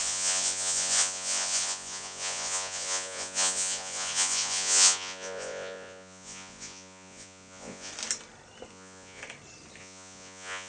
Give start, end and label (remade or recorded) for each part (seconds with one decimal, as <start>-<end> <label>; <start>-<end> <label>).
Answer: 0.0-7.9 remade; 7.9-8.7 recorded; 8.7-9.2 remade; 9.2-9.8 recorded; 9.8-10.7 remade